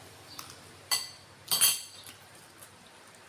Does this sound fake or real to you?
real